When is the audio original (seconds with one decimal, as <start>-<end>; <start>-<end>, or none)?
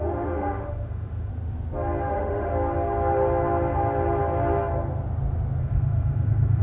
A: 1.3-2.1; 2.5-5.6